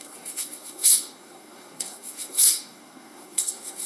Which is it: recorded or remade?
remade